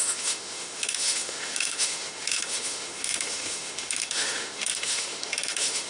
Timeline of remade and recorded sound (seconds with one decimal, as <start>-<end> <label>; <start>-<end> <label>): 0.0-5.9 remade